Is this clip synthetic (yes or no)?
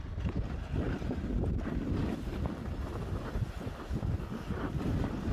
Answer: no